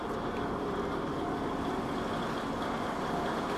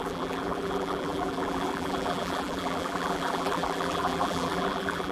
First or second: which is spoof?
second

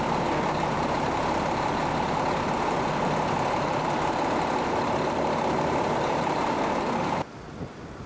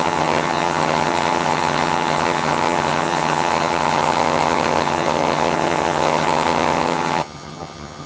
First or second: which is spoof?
second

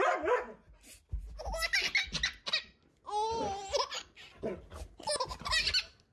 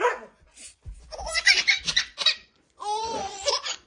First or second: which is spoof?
second